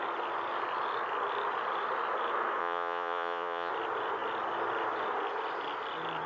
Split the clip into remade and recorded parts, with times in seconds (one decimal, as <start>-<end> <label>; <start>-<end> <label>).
0.0-2.6 recorded; 2.6-3.7 remade; 3.7-6.3 recorded